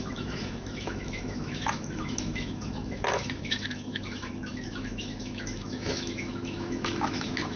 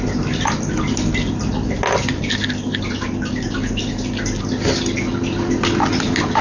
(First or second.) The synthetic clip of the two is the first